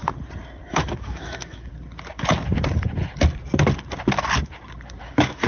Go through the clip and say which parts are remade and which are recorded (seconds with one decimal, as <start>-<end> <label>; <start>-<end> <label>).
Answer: 0.0-0.7 recorded; 0.7-1.7 remade; 1.7-5.0 recorded; 5.0-5.5 remade